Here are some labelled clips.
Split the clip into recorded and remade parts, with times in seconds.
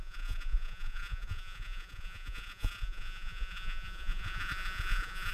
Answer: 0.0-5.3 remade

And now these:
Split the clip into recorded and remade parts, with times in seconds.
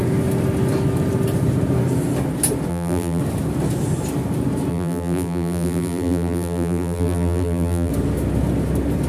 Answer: 0.0-2.7 recorded; 2.7-3.2 remade; 3.2-4.7 recorded; 4.7-7.9 remade; 7.9-9.1 recorded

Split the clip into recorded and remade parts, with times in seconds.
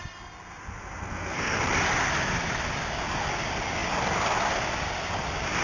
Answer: 0.0-1.0 recorded; 1.0-1.6 remade; 1.6-5.6 recorded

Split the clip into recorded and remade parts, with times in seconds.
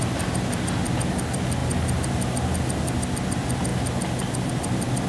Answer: 0.0-1.6 recorded; 1.6-3.1 remade; 3.1-3.7 recorded; 3.7-4.5 remade; 4.5-5.1 recorded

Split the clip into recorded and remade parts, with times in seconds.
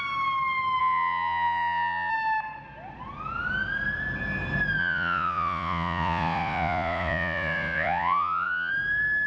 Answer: 0.0-0.8 recorded; 0.8-2.1 remade; 2.1-4.8 recorded; 4.8-8.7 remade; 8.7-9.3 recorded